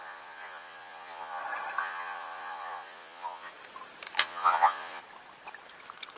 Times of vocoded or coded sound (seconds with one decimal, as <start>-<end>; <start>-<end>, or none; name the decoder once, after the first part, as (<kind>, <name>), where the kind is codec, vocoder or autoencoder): 0.0-1.4 (vocoder, Vocos); 1.8-3.5; 4.2-5.0